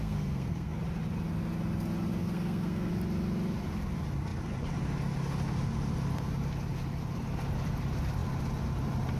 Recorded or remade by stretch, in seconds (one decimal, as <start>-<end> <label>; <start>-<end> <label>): 0.0-0.8 remade; 0.8-2.2 recorded; 2.2-2.9 remade; 2.9-9.2 recorded